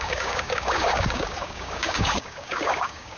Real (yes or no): no